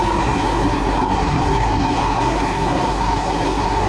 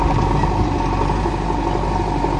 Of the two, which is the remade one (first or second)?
first